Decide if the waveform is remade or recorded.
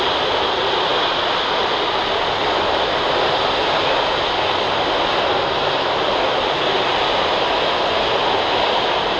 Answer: recorded